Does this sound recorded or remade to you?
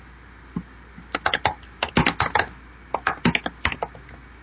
recorded